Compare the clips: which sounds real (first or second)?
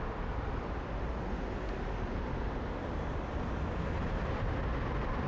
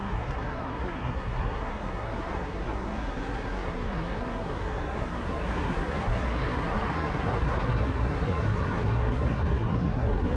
first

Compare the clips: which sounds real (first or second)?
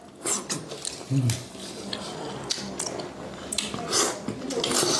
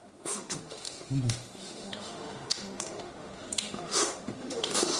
first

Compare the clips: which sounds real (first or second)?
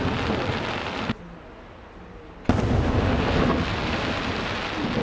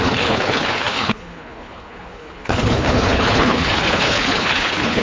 first